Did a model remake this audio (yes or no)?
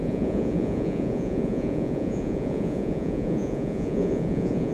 yes